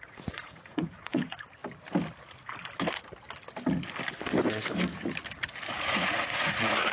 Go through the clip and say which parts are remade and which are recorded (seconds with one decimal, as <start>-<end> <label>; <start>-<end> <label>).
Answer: 0.0-1.6 remade; 1.6-5.7 recorded; 5.7-6.9 remade